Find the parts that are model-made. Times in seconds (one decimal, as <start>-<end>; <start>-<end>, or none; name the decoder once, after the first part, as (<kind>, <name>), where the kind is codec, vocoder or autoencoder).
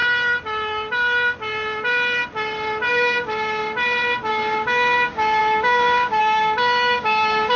2.9-3.6 (codec, DAC); 4.3-7.6